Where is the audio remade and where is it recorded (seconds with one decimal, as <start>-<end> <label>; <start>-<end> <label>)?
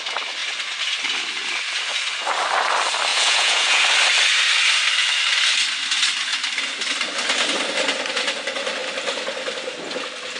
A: 0.0-3.1 recorded; 3.1-3.8 remade; 3.8-10.4 recorded